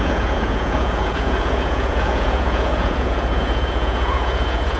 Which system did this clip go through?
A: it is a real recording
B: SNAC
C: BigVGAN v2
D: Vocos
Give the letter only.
D